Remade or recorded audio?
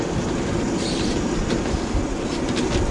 recorded